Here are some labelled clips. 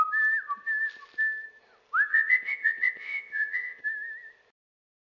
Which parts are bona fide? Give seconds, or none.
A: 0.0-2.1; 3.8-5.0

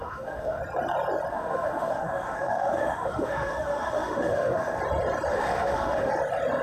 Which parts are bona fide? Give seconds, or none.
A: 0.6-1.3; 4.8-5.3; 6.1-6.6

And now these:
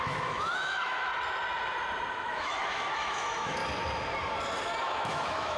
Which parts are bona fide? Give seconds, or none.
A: 1.1-2.1; 3.6-4.8